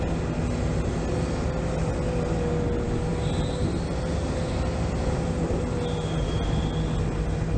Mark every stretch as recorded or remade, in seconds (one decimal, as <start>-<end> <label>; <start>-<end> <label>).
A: 0.0-7.6 recorded